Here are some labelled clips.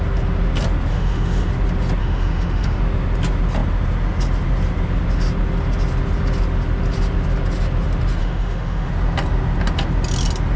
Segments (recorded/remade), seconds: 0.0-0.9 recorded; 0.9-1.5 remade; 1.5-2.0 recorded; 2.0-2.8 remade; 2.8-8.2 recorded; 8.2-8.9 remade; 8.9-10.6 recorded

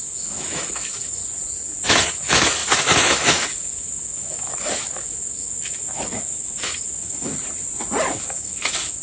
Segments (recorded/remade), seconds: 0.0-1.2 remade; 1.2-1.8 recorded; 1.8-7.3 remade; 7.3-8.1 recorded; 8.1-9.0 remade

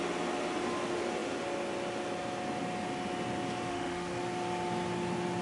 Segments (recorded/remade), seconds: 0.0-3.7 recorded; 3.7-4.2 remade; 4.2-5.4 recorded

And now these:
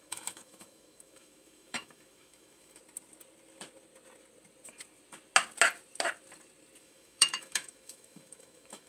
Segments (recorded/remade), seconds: 0.0-2.8 remade; 2.8-6.8 recorded; 6.8-8.9 remade

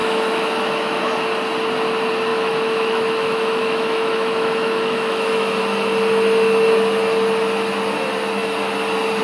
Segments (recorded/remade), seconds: 0.0-1.0 remade; 1.0-2.3 recorded; 2.3-5.6 remade; 5.6-9.2 recorded

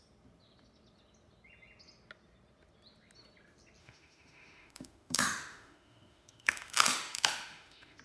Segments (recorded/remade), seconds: 0.0-3.8 recorded; 3.8-8.0 remade

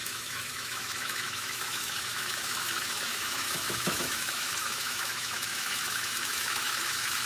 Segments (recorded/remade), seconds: 0.0-7.3 remade

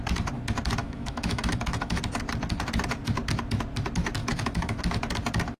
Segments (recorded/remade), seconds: 0.0-0.8 recorded; 0.8-2.0 remade; 2.0-4.2 recorded; 4.2-4.8 remade; 4.8-5.6 recorded